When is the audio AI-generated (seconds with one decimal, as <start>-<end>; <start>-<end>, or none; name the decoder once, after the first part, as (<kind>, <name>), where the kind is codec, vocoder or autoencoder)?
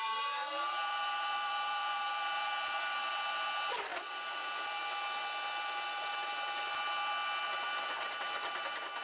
0.4-3.1 (vocoder, BigVGAN v2)